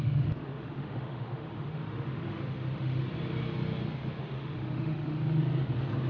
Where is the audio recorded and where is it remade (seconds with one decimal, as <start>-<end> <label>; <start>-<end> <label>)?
0.0-3.0 remade; 3.0-4.2 recorded; 4.2-5.4 remade; 5.4-6.1 recorded